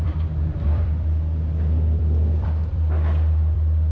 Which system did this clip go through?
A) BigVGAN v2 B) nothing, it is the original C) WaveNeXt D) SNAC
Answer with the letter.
A